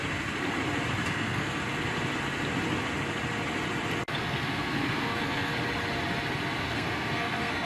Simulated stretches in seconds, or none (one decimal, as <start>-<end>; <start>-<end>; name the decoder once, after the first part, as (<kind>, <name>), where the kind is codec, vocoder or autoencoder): 1.1-1.6 (codec, SNAC); 4.2-5.5; 6.6-7.7